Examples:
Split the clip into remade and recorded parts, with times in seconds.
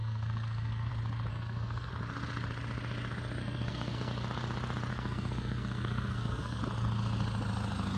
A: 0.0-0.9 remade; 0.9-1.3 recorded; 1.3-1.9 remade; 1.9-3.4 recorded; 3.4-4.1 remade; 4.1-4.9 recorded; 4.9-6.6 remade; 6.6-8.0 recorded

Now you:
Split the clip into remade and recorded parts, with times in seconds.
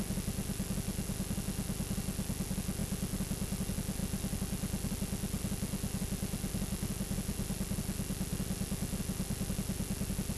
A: 0.0-10.4 recorded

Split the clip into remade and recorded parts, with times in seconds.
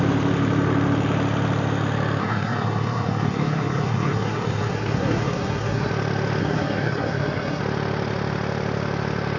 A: 0.0-2.2 recorded; 2.2-5.9 remade; 5.9-6.4 recorded; 6.4-7.6 remade; 7.6-9.4 recorded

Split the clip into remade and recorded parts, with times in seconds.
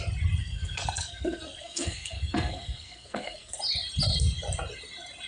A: 0.0-0.4 recorded; 0.4-3.6 remade; 3.6-5.3 recorded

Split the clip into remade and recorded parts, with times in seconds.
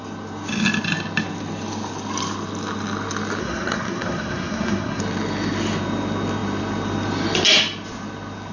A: 0.0-3.4 recorded; 3.4-5.0 remade; 5.0-8.5 recorded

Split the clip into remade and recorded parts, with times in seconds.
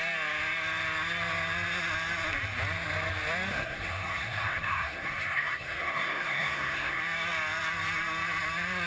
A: 0.0-3.5 recorded; 3.5-7.0 remade; 7.0-8.9 recorded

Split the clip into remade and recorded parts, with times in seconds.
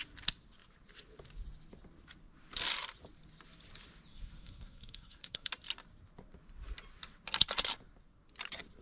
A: 0.0-4.1 recorded; 4.1-5.5 remade; 5.5-8.8 recorded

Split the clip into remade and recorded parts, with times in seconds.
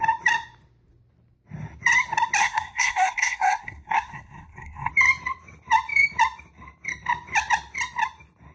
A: 0.0-2.4 recorded; 2.4-4.9 remade; 4.9-8.5 recorded